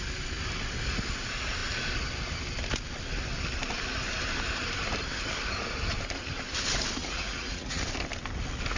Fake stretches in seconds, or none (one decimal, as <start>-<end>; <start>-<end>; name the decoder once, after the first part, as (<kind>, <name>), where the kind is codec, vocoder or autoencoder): 7.0-7.8 (vocoder, Vocos)